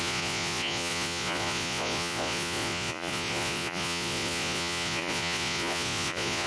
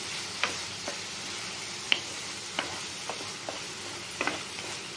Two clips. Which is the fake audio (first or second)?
first